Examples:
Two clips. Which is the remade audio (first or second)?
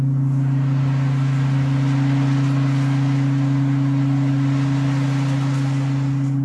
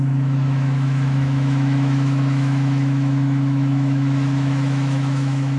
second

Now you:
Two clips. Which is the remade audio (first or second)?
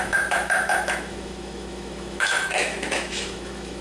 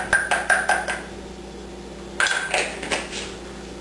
first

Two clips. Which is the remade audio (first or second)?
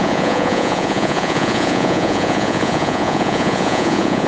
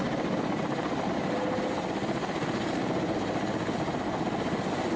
first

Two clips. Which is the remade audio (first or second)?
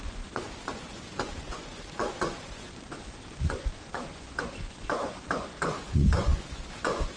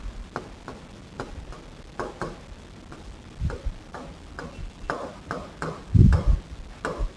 first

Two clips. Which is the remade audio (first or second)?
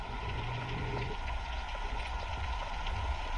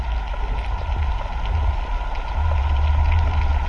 first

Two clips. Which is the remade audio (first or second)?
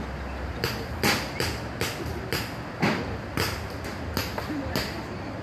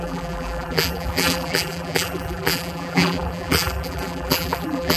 second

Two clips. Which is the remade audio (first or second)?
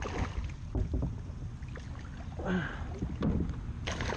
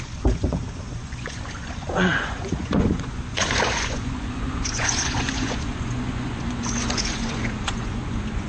second